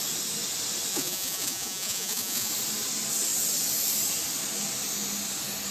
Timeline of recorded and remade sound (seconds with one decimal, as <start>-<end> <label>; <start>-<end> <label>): 0.0-0.9 recorded; 0.9-2.5 remade; 2.5-5.7 recorded